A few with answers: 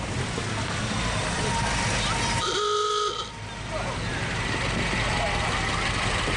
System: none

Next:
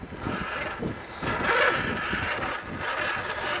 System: none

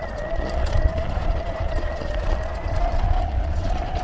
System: vocoder, Vocos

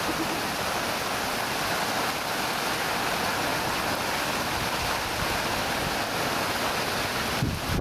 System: none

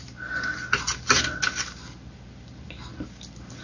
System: none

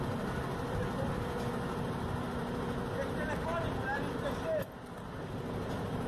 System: none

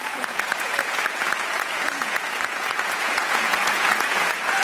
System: vocoder, Vocos